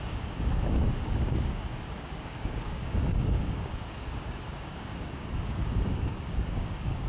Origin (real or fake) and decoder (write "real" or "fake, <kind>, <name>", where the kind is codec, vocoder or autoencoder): fake, codec, DAC